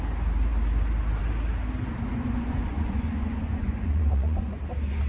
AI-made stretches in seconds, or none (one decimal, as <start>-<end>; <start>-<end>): 2.1-4.6